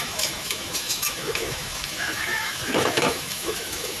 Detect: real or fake fake